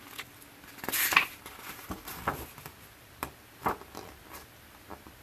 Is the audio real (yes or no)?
yes